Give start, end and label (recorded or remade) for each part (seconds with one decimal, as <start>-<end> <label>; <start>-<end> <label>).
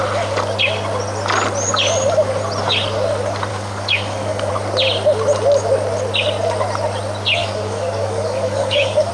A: 0.0-3.5 recorded; 3.5-4.5 remade; 4.5-7.4 recorded; 7.4-9.1 remade